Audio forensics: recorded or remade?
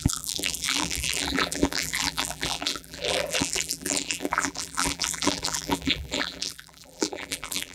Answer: remade